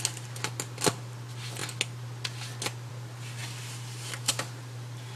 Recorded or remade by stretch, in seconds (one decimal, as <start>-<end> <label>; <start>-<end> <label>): 0.0-5.2 recorded